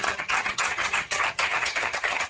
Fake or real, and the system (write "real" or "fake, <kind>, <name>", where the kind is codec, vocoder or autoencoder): fake, vocoder, HiFi-GAN